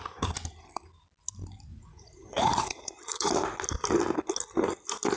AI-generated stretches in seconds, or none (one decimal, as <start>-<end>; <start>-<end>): 1.7-3.3